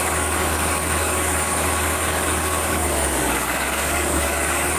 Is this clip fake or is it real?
fake